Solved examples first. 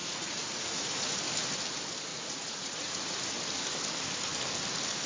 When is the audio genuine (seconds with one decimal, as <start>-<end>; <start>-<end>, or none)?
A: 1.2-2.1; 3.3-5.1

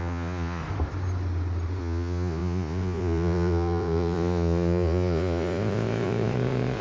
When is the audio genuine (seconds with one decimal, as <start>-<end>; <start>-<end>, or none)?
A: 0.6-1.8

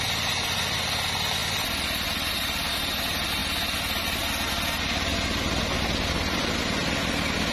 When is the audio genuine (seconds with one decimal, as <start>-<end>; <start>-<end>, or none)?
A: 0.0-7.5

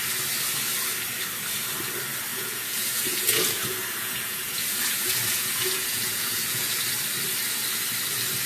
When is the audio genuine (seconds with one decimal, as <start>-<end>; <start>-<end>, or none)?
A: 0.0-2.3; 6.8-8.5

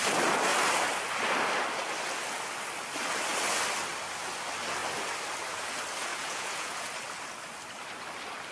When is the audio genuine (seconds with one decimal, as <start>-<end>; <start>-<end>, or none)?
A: 0.0-6.1; 6.9-8.5

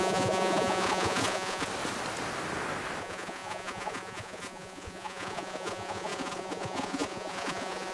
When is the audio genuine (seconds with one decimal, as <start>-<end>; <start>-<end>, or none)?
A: 1.7-3.0

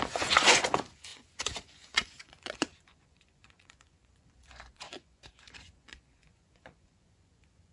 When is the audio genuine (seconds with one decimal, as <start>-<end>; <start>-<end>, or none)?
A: none

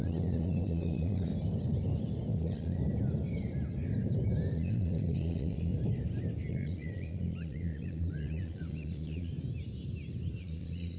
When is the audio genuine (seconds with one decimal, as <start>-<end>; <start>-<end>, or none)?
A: 1.3-2.3; 2.8-4.5; 5.7-6.5; 9.3-10.4